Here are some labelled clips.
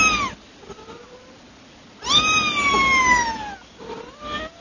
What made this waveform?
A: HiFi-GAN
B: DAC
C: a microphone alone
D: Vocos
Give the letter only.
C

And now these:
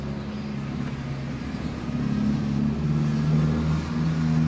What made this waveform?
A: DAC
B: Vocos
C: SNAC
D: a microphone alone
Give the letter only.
D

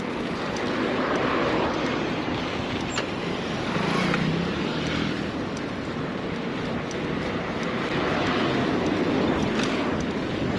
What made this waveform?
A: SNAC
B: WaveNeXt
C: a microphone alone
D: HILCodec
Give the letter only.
C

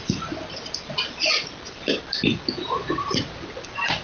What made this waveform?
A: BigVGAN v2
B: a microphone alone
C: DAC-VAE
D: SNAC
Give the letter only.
B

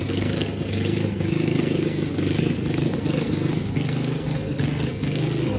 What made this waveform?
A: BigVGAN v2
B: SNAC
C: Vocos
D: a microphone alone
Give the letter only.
B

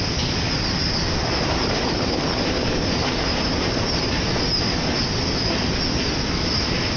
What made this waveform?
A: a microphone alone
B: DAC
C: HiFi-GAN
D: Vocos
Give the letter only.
A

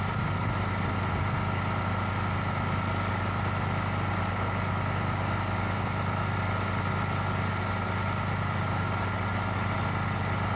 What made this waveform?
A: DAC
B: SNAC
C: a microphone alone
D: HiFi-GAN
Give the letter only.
C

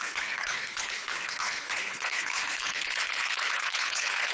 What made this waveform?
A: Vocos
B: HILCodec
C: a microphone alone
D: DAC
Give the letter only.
B